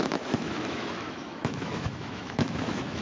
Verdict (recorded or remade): remade